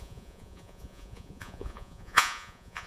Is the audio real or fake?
fake